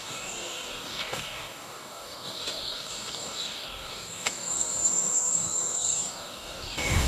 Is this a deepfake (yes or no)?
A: yes